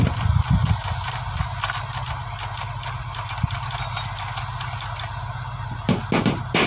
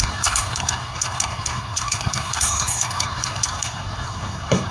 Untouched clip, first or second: first